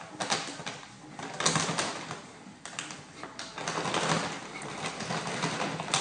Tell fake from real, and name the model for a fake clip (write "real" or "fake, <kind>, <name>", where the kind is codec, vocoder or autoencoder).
real